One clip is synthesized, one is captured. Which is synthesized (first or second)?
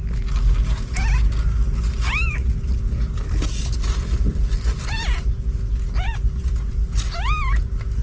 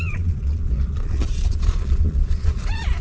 second